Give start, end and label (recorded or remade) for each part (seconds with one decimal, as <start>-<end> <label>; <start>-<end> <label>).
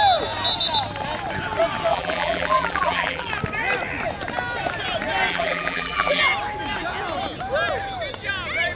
0.0-1.9 recorded; 1.9-3.3 remade; 3.3-5.3 recorded; 5.3-6.2 remade; 6.2-8.8 recorded